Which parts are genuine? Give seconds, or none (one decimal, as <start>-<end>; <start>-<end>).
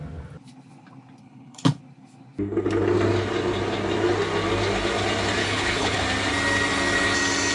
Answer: 0.0-1.2; 1.8-5.4; 6.0-7.5